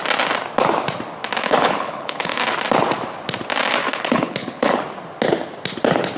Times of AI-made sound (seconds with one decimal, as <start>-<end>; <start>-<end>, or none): 1.4-2.4; 3.8-4.8